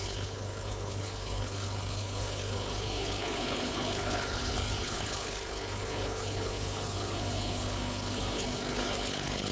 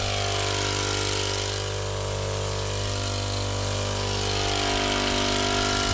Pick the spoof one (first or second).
first